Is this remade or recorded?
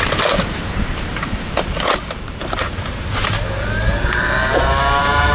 remade